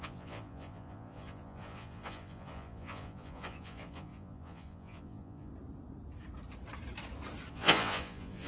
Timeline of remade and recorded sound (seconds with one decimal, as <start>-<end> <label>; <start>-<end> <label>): 0.0-5.5 remade; 5.5-7.5 recorded; 7.5-8.5 remade